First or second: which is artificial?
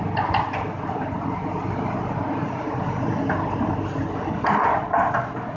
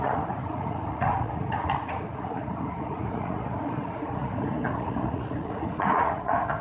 second